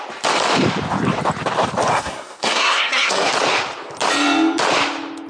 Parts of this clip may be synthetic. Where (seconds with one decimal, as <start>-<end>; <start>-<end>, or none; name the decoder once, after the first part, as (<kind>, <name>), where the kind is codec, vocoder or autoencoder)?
1.9-3.3 (codec, SNAC)